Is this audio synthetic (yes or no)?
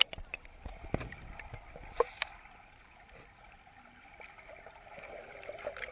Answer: no